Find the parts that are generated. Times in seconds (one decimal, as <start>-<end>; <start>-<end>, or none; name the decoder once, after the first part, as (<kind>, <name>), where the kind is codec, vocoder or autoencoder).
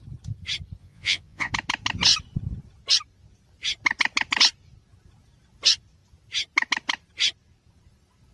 0.8-1.5 (vocoder, Vocos)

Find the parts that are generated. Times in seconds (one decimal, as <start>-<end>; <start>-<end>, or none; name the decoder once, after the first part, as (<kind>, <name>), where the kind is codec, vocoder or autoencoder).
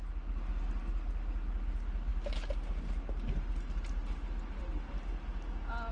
none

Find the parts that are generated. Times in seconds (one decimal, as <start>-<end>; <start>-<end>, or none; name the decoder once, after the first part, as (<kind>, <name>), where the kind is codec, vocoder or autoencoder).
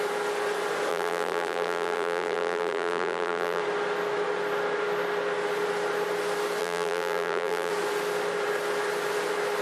0.9-3.6 (vocoder, BigVGAN v2); 6.6-7.7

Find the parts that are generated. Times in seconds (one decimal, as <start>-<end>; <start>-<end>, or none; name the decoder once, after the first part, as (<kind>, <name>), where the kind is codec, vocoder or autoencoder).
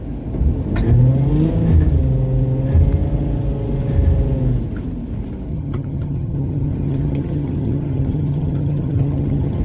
5.5-9.6 (vocoder, HiFi-GAN)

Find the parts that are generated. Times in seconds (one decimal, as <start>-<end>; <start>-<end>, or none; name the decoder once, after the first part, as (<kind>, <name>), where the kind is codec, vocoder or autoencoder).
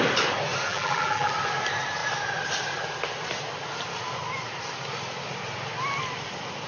0.7-1.3 (vocoder, BigVGAN v2)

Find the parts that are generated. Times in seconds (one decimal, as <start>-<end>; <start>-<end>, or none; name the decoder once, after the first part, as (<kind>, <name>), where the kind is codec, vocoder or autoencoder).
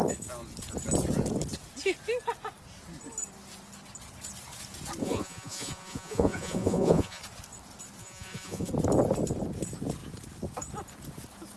5.0-7.2 (vocoder, Vocos); 8.0-8.7